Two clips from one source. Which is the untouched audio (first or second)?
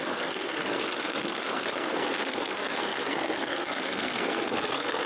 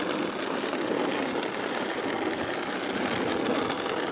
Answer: second